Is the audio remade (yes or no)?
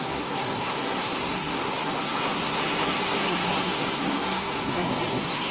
yes